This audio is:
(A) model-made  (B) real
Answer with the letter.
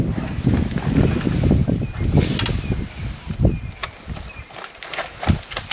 B